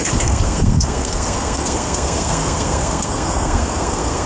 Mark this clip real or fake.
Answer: fake